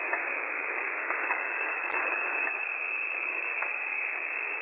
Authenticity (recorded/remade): remade